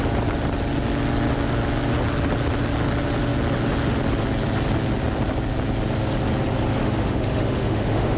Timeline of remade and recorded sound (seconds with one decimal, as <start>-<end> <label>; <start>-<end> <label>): 0.0-6.8 recorded; 6.8-8.2 remade

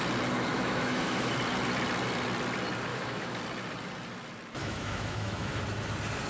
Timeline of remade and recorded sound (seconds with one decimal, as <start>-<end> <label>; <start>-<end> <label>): 0.0-0.5 recorded; 0.5-1.3 remade; 1.3-2.9 recorded; 2.9-3.4 remade; 3.4-4.6 recorded; 4.6-5.6 remade; 5.6-6.3 recorded

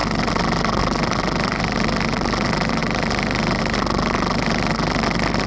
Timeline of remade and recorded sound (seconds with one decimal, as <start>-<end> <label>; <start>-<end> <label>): 0.0-5.5 recorded

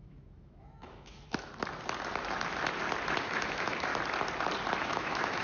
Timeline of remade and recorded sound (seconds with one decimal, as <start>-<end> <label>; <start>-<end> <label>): 0.0-1.5 remade; 1.5-3.2 recorded; 3.2-3.9 remade; 3.9-4.8 recorded; 4.8-5.4 remade